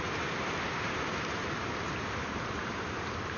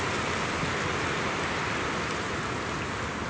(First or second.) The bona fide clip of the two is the second